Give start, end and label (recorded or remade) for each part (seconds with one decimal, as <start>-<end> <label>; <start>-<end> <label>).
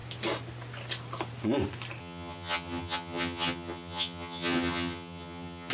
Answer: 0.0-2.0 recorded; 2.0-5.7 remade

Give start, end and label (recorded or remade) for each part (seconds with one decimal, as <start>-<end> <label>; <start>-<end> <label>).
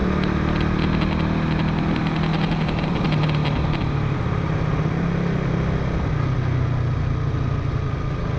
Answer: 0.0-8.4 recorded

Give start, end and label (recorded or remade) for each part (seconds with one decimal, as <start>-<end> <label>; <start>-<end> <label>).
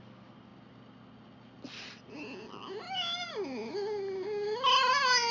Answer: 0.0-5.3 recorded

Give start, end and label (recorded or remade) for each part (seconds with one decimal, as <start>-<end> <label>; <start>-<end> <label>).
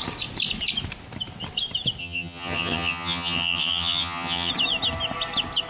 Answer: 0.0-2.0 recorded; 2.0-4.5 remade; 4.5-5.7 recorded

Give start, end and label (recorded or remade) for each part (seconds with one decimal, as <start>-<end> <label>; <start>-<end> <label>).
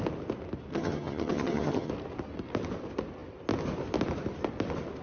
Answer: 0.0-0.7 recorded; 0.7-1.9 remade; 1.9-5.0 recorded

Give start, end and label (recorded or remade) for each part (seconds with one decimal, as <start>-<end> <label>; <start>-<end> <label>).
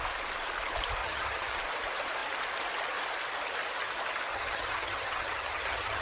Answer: 0.0-1.0 recorded; 1.0-1.6 remade; 1.6-4.3 recorded; 4.3-6.0 remade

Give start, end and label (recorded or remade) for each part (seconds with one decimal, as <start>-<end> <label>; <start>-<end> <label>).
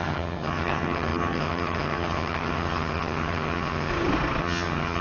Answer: 0.0-3.9 remade; 3.9-4.4 recorded; 4.4-5.0 remade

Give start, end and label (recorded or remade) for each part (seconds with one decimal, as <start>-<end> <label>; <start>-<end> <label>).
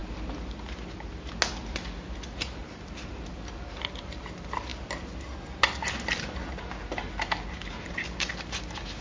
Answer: 0.0-9.0 recorded